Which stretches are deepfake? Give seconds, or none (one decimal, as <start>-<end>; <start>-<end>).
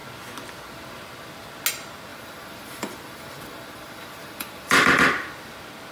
2.1-5.1